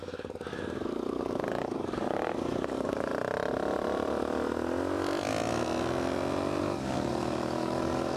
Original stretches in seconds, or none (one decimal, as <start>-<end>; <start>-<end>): 3.1-6.6